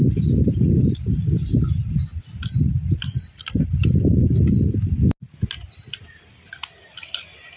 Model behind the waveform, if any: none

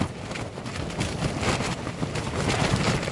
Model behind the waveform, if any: none